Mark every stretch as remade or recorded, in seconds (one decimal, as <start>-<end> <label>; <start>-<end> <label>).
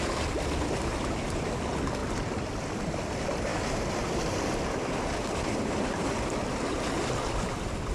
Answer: 0.0-7.9 recorded